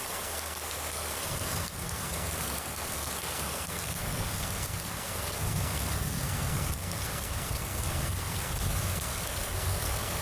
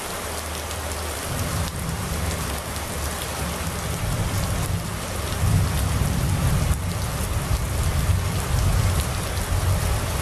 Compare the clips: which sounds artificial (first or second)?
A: first